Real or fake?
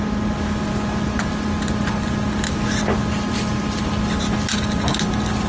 real